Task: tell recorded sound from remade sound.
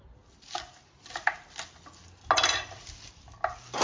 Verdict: recorded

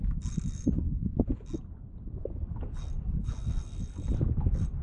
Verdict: recorded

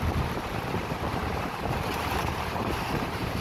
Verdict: remade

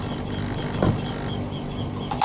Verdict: recorded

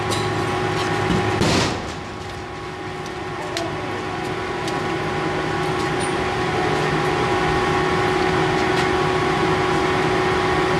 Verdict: recorded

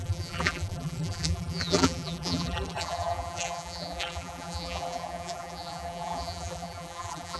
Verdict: remade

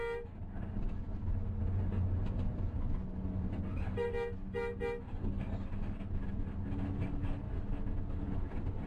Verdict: recorded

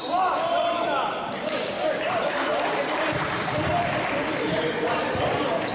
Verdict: remade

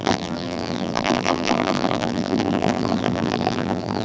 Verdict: remade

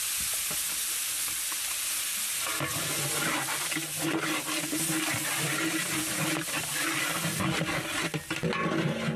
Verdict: recorded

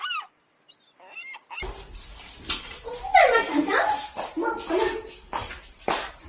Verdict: recorded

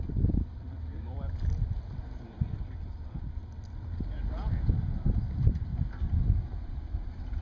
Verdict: remade